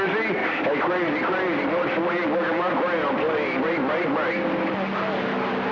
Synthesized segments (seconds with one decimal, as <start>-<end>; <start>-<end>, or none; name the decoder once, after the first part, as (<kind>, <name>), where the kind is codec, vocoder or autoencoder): 0.4-3.6 (vocoder, BigVGAN v2)